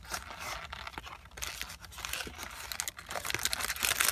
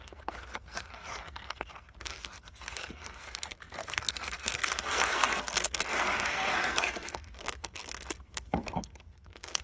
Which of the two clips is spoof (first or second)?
second